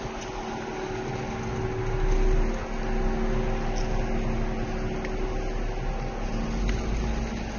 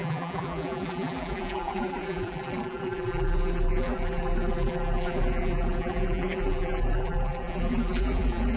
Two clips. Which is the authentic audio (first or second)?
first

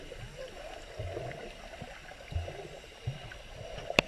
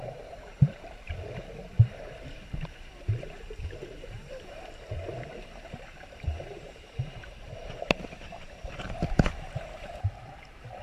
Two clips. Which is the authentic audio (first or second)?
first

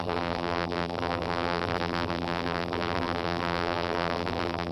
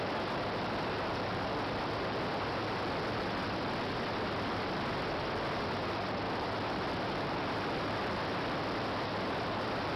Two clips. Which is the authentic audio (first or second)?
second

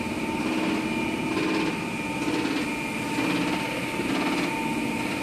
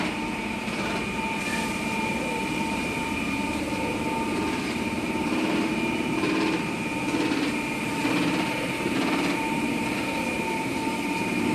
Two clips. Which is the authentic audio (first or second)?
first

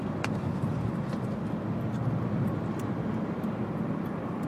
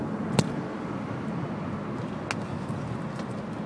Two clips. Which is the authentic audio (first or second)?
second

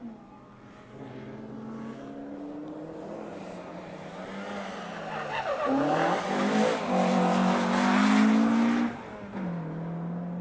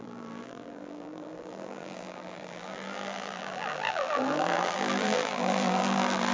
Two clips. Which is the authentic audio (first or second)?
first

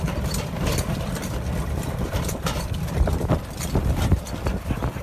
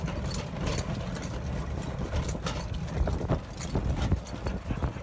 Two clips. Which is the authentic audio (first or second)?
second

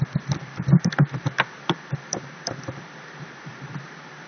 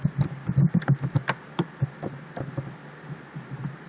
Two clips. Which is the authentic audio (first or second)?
second